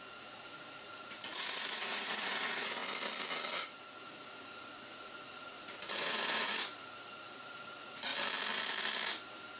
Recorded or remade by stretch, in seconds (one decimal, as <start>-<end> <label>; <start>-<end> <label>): 0.0-2.8 remade; 2.8-3.6 recorded; 3.6-8.1 remade; 8.1-9.6 recorded